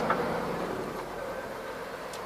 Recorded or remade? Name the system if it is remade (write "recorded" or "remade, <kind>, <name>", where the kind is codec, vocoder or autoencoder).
remade, vocoder, BigVGAN v2